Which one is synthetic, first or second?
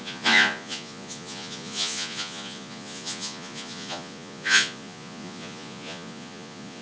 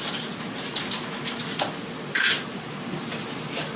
first